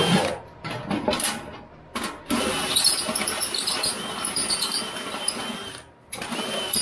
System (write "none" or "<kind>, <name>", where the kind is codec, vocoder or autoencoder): none